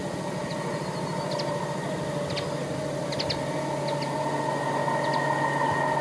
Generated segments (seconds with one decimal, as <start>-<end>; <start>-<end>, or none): none